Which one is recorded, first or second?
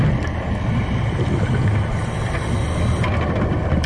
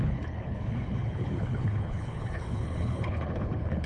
first